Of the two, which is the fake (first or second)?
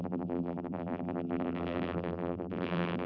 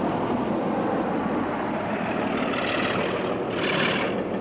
first